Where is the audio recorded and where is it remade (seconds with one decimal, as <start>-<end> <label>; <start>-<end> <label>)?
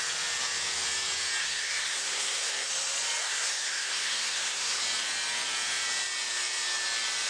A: 0.0-1.4 recorded; 1.4-2.7 remade; 2.7-3.2 recorded; 3.2-4.8 remade; 4.8-7.3 recorded